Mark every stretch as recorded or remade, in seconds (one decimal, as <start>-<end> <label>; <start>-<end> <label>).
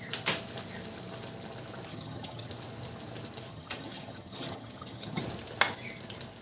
0.0-1.9 recorded; 1.9-2.5 remade; 2.5-3.5 recorded; 3.5-5.2 remade; 5.2-6.4 recorded